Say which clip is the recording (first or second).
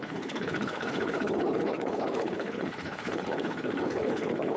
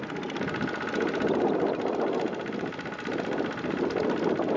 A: second